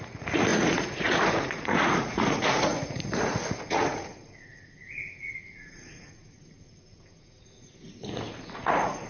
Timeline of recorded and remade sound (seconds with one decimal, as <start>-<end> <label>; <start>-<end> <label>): 0.0-9.1 remade